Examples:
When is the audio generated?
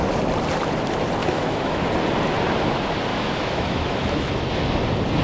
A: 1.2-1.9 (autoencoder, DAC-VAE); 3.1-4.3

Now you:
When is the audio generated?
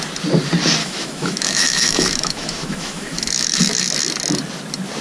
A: 0.8-3.8 (autoencoder, DAC-VAE)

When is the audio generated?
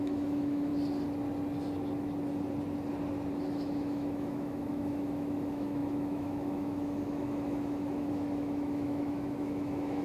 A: 0.0-0.7 (autoencoder, DAC-VAE); 3.3-10.0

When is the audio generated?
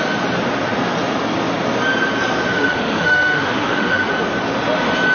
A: 2.5-4.1 (autoencoder, DAC-VAE)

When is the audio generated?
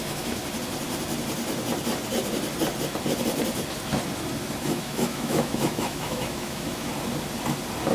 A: 0.0-0.4 (autoencoder, DAC-VAE); 4.6-6.9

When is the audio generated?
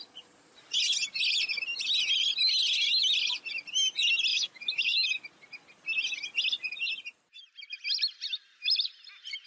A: 4.3-5.2 (autoencoder, DAC-VAE)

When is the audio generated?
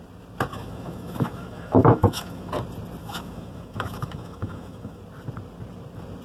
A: 0.5-2.5 (autoencoder, DAC-VAE); 3.0-5.0